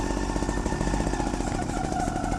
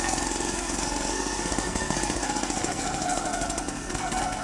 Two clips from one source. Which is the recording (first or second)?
first